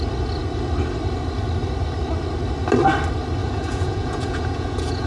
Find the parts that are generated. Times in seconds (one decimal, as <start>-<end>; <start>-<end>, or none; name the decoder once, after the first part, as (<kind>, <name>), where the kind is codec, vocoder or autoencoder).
3.4-5.1 (vocoder, Vocos)